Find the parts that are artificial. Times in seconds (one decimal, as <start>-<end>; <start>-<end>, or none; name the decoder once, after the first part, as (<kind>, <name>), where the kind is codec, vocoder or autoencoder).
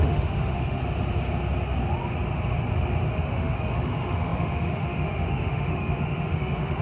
0.0-0.8 (autoencoder, DAC-VAE); 3.1-6.8